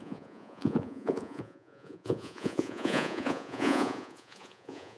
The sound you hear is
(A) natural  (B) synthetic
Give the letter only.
B